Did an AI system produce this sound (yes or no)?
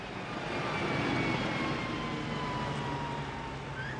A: no